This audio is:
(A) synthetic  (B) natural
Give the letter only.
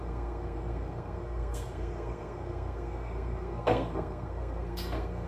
A